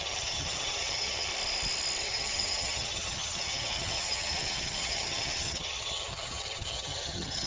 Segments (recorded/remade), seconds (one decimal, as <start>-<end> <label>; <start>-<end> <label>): 0.0-1.3 remade; 1.3-2.0 recorded; 2.0-7.5 remade